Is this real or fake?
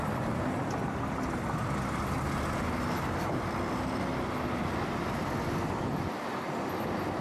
real